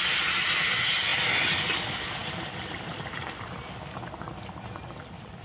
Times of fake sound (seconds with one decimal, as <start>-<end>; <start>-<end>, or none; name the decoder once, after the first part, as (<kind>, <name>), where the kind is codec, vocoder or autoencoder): none